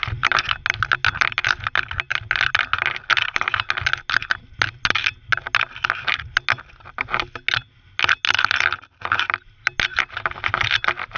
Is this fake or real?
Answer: real